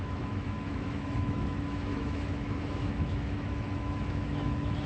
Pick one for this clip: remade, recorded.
remade